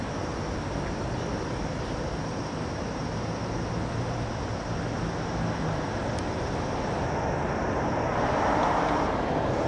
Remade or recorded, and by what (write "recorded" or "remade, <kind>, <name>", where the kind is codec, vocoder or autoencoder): recorded